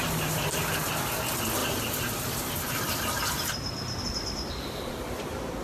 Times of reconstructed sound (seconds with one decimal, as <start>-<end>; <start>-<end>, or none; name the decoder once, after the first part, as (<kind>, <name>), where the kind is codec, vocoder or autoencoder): 1.6-5.0 (vocoder, BigVGAN v2)